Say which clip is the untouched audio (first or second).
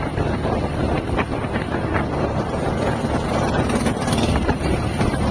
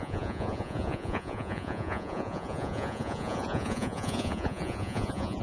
first